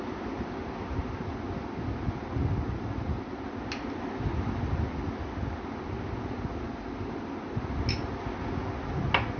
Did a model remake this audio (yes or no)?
no